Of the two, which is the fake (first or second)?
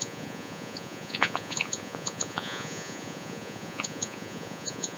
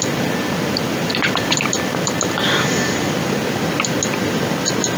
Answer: first